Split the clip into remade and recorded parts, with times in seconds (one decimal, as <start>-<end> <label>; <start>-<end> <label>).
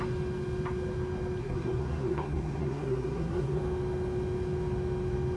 0.0-1.4 recorded; 1.4-3.6 remade; 3.6-5.4 recorded